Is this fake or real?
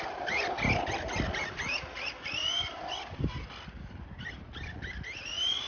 real